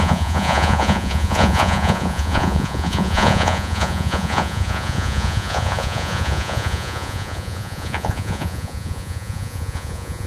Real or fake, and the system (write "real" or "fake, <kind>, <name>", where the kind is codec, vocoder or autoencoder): fake, vocoder, Vocos